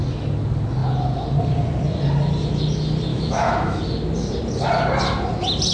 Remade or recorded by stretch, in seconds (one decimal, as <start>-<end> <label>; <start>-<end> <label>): 0.0-3.1 recorded; 3.1-3.8 remade; 3.8-5.7 recorded